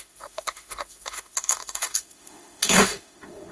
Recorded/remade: remade